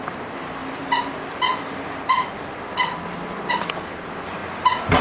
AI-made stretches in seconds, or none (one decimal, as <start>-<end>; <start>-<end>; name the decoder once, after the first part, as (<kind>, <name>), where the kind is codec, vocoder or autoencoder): 0.6-3.5 (vocoder, BigVGAN v2); 4.4-5.0